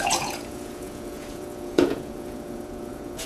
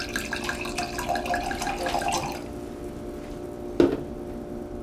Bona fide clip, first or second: second